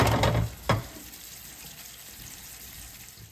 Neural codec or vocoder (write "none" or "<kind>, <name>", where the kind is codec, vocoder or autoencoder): none